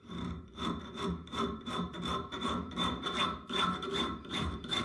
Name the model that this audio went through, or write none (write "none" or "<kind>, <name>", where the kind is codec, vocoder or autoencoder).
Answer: vocoder, BigVGAN v2